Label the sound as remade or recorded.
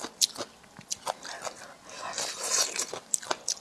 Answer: recorded